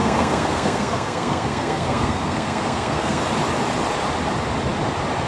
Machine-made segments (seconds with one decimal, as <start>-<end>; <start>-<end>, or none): 0.0-3.2